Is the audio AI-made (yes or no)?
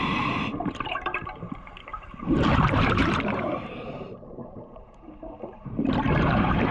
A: yes